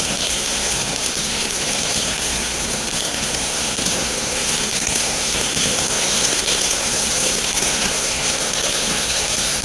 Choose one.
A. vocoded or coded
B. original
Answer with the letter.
A